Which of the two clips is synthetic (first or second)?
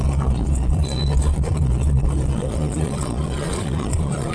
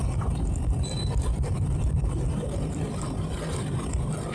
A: first